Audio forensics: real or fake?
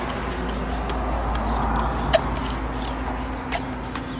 real